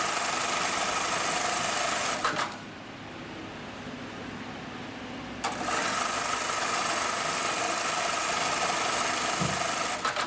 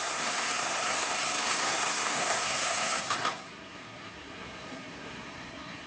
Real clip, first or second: first